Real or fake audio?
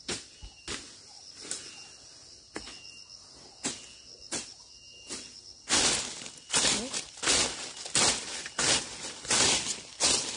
real